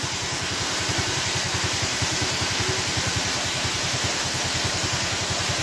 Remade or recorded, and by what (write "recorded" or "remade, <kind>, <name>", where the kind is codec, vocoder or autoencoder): recorded